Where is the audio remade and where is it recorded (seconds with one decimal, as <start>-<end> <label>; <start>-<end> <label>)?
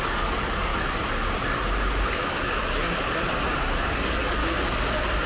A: 0.0-0.7 remade; 0.7-3.9 recorded; 3.9-4.4 remade; 4.4-5.3 recorded